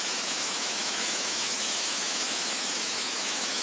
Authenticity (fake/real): fake